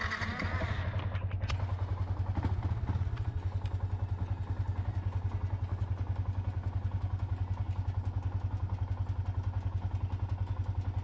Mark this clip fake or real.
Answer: real